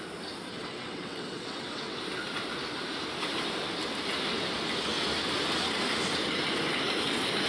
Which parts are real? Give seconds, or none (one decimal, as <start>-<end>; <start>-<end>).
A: 0.0-0.5; 2.0-7.5